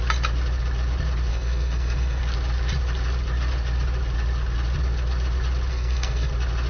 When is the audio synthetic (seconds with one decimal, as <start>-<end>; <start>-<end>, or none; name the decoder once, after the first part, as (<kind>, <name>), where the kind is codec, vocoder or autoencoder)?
1.3-2.2 (codec, SNAC); 5.7-6.3